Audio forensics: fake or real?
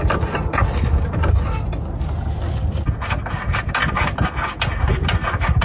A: real